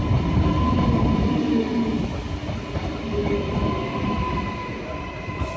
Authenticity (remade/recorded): recorded